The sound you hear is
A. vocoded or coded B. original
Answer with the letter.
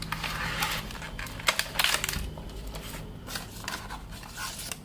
B